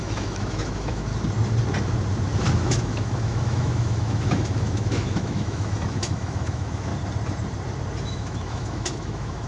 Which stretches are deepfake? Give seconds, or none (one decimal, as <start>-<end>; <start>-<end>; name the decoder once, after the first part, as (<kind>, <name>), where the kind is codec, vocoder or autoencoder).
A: 0.0-1.1 (autoencoder, DAC-VAE); 2.5-6.9; 8.0-9.5